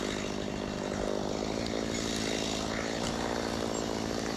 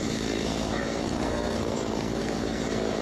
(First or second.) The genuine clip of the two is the first